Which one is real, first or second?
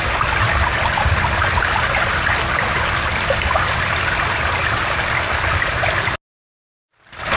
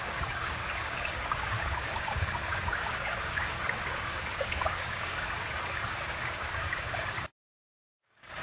first